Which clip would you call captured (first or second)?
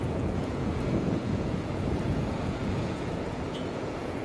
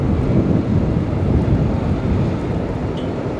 second